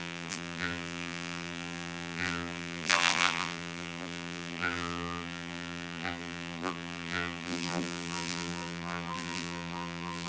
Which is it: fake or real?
fake